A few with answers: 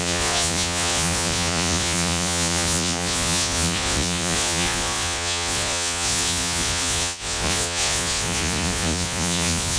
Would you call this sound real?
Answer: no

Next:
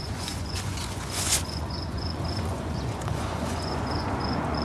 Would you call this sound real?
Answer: no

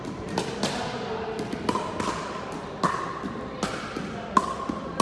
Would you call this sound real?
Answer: yes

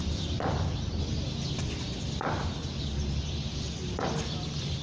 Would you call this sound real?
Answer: yes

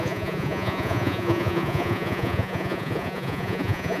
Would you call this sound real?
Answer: no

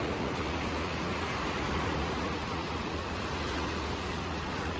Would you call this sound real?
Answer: no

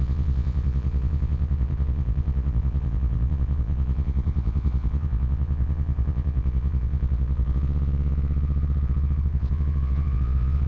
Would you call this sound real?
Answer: no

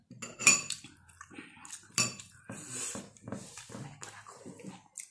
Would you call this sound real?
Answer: yes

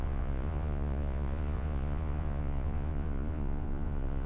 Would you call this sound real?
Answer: no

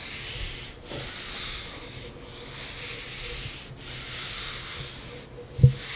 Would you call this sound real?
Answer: yes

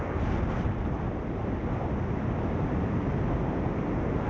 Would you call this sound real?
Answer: yes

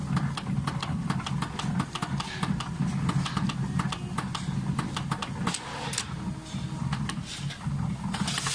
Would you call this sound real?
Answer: yes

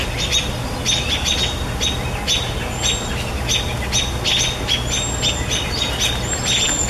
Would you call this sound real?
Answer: yes